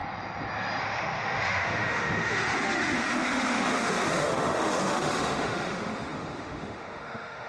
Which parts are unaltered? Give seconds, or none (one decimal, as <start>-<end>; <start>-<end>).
0.0-0.8